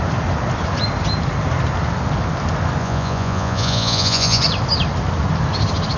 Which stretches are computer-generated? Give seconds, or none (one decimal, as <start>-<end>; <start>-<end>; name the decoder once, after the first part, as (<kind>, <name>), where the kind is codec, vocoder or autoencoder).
2.8-4.4 (vocoder, Vocos)